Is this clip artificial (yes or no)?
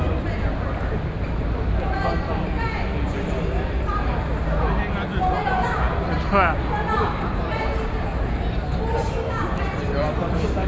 no